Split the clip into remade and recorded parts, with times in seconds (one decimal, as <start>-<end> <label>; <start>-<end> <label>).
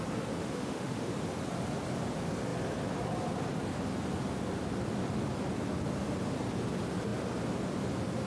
0.0-0.4 recorded; 0.4-1.1 remade; 1.1-8.3 recorded